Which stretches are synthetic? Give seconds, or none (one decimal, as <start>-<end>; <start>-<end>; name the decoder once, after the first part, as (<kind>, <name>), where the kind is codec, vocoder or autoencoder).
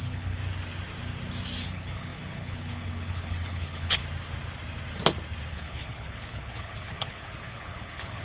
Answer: 0.0-0.4 (codec, HILCodec); 1.6-4.0; 5.5-8.2